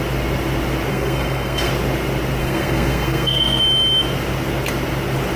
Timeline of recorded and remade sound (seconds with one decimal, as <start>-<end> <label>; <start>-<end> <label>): 0.0-0.9 recorded; 0.9-1.7 remade; 1.7-2.4 recorded; 2.4-3.6 remade; 3.6-5.4 recorded